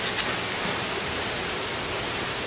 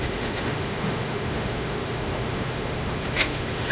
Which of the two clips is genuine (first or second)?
first